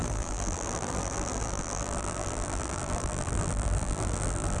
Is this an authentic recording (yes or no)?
no